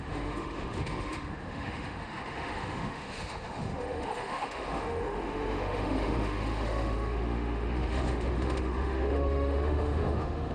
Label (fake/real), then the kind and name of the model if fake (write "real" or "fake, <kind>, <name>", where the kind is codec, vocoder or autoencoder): fake, autoencoder, DAC-VAE